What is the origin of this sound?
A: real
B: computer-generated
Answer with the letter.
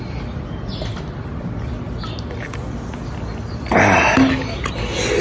A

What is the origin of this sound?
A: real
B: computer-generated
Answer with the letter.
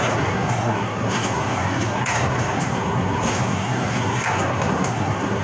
B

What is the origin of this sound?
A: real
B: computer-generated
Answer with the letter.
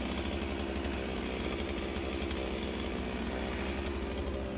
A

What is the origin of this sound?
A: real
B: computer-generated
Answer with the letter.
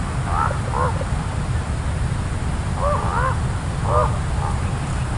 A